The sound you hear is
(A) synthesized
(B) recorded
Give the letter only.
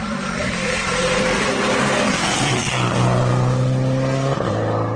B